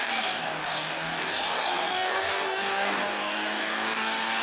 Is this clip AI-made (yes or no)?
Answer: yes